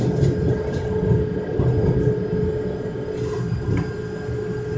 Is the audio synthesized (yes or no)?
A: no